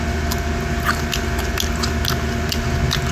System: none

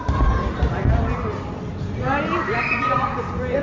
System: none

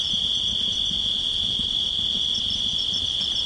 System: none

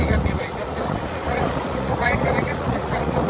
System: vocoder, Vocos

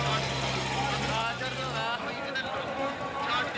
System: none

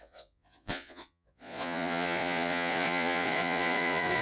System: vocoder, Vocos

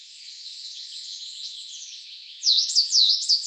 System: vocoder, Vocos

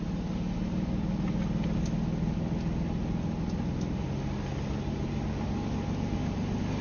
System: none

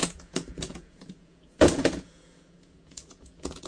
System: vocoder, Vocos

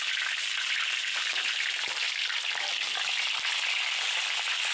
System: none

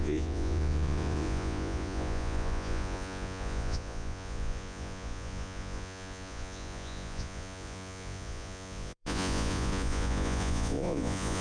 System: vocoder, Vocos